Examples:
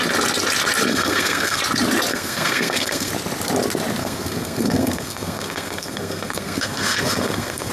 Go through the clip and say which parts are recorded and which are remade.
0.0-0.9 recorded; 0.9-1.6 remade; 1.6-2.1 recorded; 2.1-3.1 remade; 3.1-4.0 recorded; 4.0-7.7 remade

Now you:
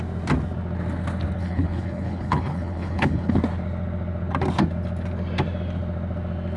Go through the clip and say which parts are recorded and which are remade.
0.0-1.4 recorded; 1.4-3.4 remade; 3.4-6.6 recorded

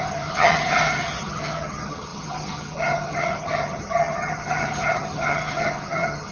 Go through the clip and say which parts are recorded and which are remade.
0.0-6.3 remade

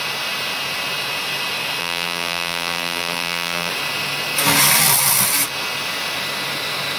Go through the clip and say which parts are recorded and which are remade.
0.0-1.8 recorded; 1.8-3.7 remade; 3.7-7.0 recorded

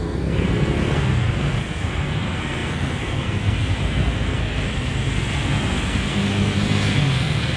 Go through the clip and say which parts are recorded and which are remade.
0.0-7.6 remade

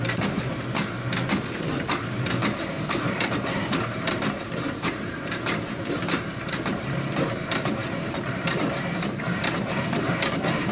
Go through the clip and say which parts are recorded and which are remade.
0.0-10.7 remade

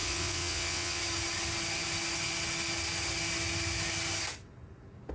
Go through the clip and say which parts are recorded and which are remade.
0.0-1.0 remade; 1.0-5.1 recorded

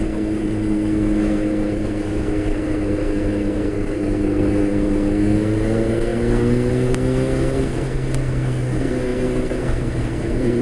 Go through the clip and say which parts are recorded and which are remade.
0.0-10.6 remade